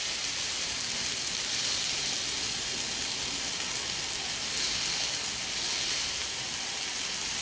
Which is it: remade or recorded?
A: recorded